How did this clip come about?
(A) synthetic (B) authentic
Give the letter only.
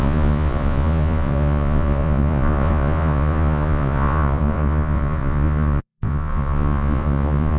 A